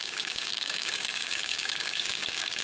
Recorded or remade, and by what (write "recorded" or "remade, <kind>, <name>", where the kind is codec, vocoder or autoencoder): remade, codec, DAC